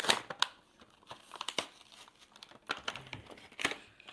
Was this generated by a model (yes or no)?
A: no